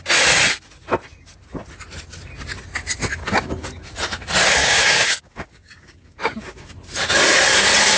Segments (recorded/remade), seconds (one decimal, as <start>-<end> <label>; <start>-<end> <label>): 0.0-3.2 recorded; 3.2-3.8 remade; 3.8-4.6 recorded; 4.6-6.7 remade; 6.7-8.0 recorded